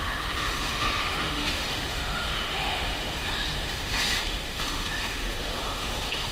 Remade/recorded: remade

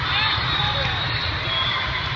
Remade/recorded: recorded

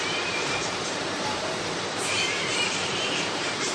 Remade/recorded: remade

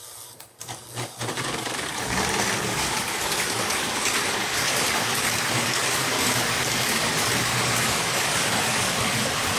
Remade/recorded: remade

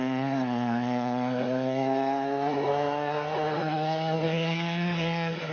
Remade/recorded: remade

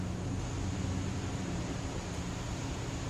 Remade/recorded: recorded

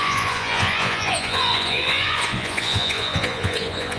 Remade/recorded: remade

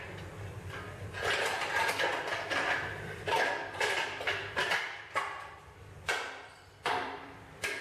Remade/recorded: remade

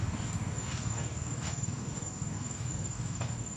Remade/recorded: remade